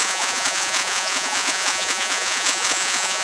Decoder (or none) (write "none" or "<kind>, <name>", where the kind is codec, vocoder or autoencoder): vocoder, Vocos